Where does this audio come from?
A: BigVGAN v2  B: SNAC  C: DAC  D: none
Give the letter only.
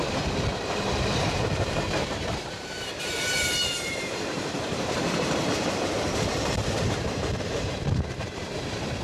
A